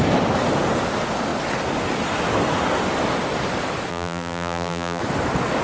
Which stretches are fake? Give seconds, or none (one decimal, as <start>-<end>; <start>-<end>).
3.9-5.0